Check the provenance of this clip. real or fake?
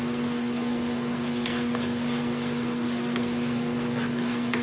fake